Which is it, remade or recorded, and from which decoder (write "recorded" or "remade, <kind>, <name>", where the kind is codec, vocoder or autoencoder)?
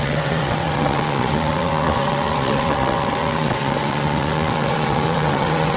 remade, vocoder, WaveNeXt